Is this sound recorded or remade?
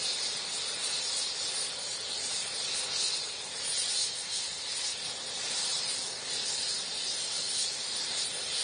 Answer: recorded